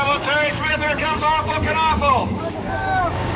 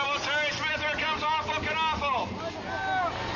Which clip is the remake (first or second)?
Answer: first